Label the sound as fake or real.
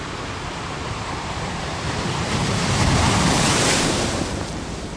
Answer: fake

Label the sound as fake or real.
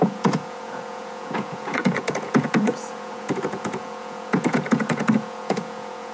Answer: fake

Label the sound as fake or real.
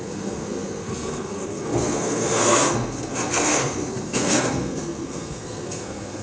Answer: fake